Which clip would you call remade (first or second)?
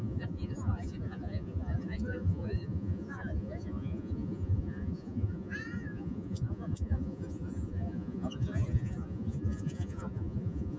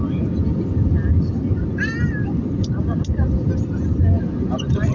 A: first